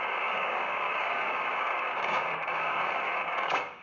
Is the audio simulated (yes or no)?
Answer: yes